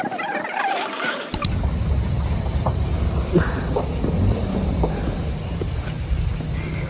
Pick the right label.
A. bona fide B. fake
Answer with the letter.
A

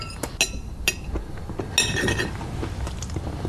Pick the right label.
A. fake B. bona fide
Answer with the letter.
B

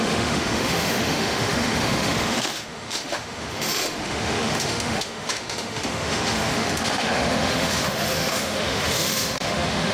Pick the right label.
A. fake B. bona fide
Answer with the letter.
A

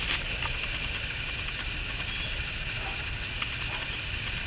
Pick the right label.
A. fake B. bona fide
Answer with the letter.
B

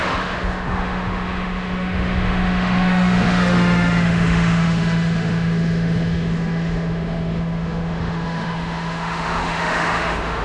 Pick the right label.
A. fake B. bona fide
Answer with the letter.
A